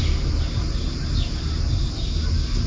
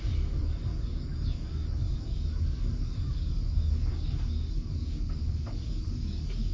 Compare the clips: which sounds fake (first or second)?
second